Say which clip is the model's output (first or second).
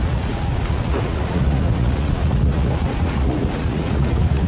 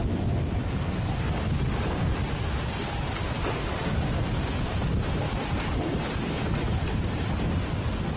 first